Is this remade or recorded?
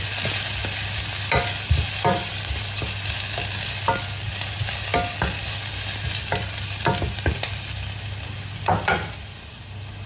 recorded